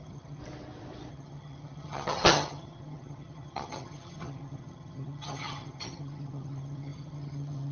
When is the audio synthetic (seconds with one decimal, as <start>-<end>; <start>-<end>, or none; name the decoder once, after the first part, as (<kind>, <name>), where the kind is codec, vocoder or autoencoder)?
0.0-0.4 (vocoder, HiFi-GAN); 1.1-7.7